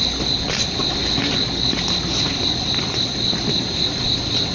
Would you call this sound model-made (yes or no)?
no